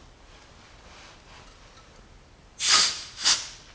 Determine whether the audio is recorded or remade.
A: recorded